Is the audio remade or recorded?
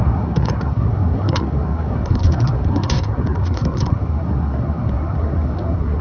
remade